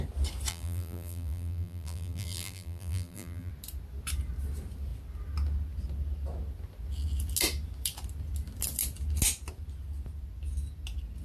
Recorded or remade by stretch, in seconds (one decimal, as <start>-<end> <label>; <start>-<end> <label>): 0.0-0.5 recorded; 0.5-3.5 remade; 3.5-11.2 recorded